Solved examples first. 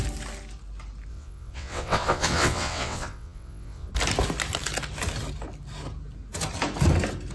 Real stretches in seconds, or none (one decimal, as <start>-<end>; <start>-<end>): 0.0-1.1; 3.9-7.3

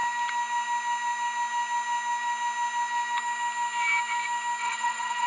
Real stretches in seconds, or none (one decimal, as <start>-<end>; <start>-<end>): 0.0-4.6

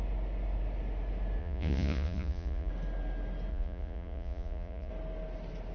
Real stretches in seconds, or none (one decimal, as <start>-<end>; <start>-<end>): 0.0-1.4; 2.7-3.5; 4.9-5.7

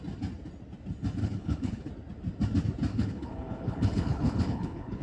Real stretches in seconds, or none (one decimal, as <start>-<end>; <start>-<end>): 0.0-1.2; 1.9-2.9